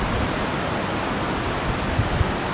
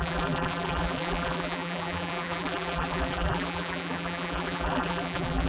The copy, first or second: second